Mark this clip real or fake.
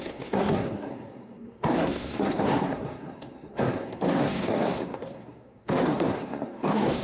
fake